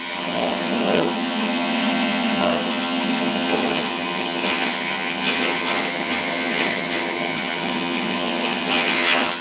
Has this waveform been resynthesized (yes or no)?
yes